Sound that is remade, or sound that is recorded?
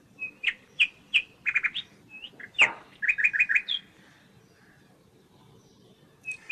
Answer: recorded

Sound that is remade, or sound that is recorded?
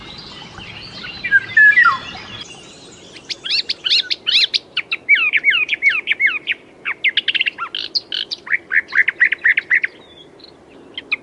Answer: recorded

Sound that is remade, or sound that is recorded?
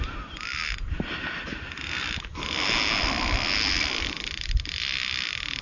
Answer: recorded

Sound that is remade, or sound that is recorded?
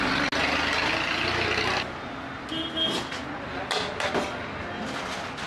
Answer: recorded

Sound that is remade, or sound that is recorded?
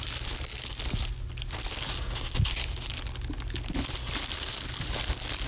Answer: recorded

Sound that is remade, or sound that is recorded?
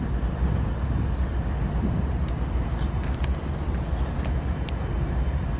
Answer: recorded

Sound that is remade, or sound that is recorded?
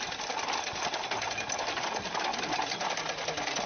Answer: recorded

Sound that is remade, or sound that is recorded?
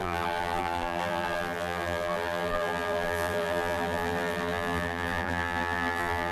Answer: remade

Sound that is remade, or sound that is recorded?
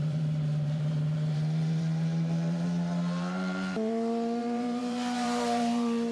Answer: remade